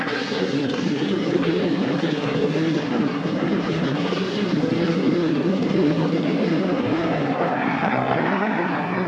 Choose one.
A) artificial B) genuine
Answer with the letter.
A